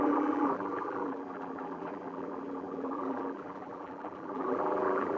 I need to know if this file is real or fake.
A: fake